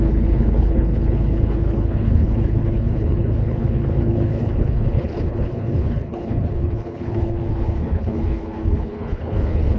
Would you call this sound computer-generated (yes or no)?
yes